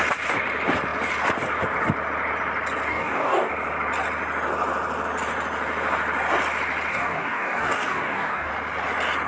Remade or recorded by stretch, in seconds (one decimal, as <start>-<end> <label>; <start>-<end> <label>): 0.0-2.9 recorded; 2.9-3.5 remade; 3.5-6.9 recorded; 6.9-8.5 remade; 8.5-9.3 recorded